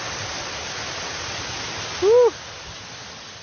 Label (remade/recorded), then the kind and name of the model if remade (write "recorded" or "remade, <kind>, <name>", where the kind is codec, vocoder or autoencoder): recorded